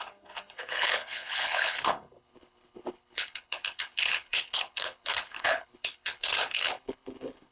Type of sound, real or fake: fake